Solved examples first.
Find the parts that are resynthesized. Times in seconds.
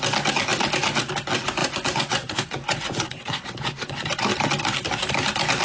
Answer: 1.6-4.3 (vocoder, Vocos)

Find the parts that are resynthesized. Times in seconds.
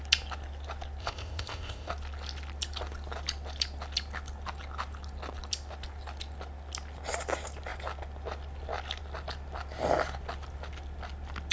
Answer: 1.0-1.9 (codec, ZipCodec)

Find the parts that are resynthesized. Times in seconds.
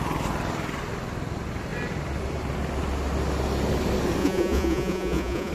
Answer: 4.2-5.5 (vocoder, Vocos)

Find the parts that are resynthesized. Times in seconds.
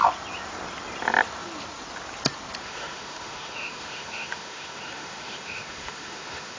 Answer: 2.6-6.6 (autoencoder, DAC-VAE)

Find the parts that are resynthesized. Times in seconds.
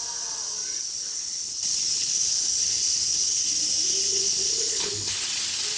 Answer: 0.8-3.4 (codec, HILCodec); 4.1-5.3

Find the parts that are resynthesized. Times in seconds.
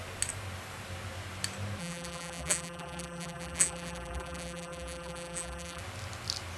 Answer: 1.8-5.8 (vocoder, BigVGAN v2)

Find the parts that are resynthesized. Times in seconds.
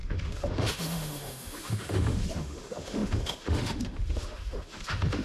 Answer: 0.0-5.2 (autoencoder, DAC-VAE)